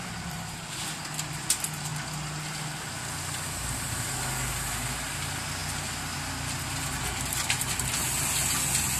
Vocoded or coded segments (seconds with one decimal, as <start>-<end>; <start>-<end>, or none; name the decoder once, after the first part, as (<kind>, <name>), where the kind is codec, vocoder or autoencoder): none